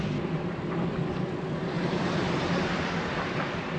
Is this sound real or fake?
real